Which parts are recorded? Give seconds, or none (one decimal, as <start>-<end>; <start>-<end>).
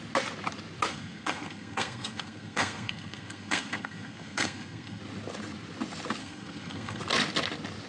0.0-0.9; 5.0-6.2; 7.0-7.9